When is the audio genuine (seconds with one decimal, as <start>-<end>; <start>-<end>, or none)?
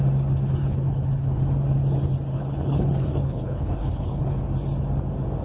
0.0-0.6; 1.3-2.3; 4.4-5.4